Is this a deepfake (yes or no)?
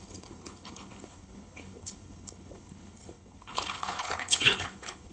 yes